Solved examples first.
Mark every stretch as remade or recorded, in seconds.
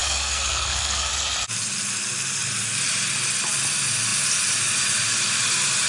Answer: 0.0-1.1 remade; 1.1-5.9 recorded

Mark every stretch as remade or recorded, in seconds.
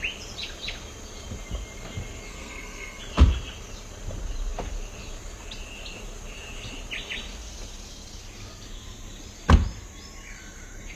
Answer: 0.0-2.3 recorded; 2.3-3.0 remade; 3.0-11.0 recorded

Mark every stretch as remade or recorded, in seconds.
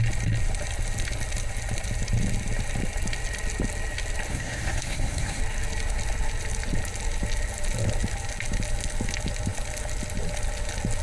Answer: 0.0-4.3 recorded; 4.3-5.4 remade; 5.4-11.0 recorded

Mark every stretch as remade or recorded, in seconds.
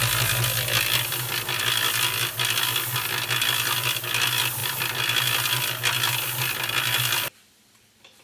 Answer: 0.0-8.2 recorded